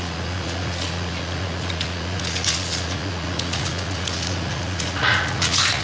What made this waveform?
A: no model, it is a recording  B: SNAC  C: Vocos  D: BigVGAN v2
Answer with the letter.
C